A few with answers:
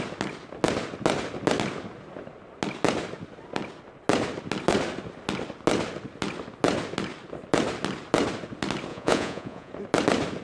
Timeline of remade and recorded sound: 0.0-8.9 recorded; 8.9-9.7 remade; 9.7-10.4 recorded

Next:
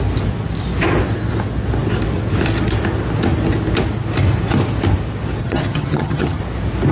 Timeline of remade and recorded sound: 0.0-5.4 recorded; 5.4-6.4 remade; 6.4-6.9 recorded